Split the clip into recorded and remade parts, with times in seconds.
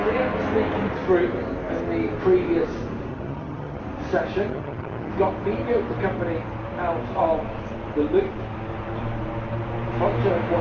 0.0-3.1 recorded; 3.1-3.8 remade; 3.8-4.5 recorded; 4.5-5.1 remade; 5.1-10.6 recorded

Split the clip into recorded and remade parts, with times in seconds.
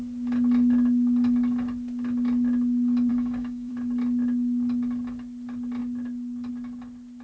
0.0-3.1 recorded; 3.1-3.7 remade; 3.7-7.2 recorded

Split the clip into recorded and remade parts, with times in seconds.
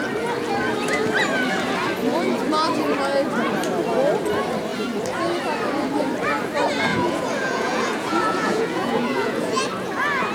0.0-6.9 recorded; 6.9-9.6 remade; 9.6-10.3 recorded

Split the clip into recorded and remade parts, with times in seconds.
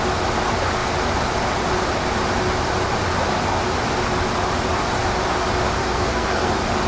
0.0-5.8 recorded; 5.8-6.5 remade; 6.5-6.9 recorded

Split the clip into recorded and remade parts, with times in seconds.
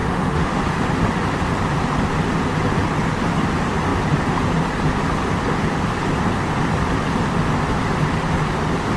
0.0-0.6 remade; 0.6-9.0 recorded